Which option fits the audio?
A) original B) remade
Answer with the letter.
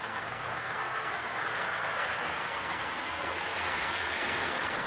B